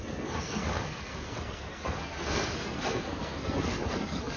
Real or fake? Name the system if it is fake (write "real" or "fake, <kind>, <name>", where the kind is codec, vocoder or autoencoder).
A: fake, codec, SNAC